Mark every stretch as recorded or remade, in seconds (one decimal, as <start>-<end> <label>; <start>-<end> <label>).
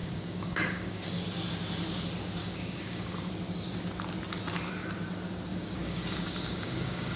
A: 0.0-1.2 remade; 1.2-2.4 recorded; 2.4-3.3 remade; 3.3-5.5 recorded; 5.5-7.2 remade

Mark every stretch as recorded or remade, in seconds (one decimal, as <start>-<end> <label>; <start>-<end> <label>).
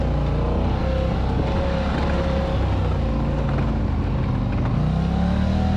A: 0.0-5.8 recorded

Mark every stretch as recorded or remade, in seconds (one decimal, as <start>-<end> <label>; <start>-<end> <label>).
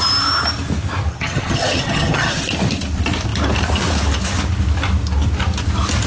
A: 0.0-1.1 recorded; 1.1-2.4 remade; 2.4-6.1 recorded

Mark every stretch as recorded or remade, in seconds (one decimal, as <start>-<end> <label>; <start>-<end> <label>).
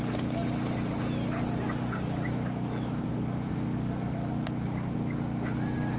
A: 0.0-6.0 recorded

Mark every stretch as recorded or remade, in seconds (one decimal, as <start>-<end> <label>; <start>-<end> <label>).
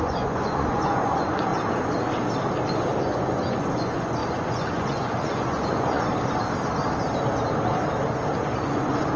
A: 0.0-1.5 remade; 1.5-3.0 recorded; 3.0-6.1 remade; 6.1-8.3 recorded; 8.3-9.2 remade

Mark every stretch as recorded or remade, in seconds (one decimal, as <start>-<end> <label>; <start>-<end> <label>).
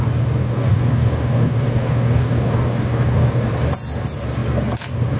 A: 0.0-0.4 recorded; 0.4-3.5 remade; 3.5-5.2 recorded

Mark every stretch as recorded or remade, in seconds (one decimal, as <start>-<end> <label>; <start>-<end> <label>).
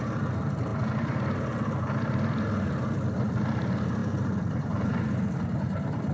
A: 0.0-4.0 recorded; 4.0-5.2 remade; 5.2-6.1 recorded